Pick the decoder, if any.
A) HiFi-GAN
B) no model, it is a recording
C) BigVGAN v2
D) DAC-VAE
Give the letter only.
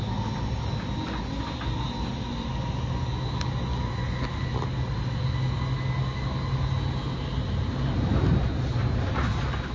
B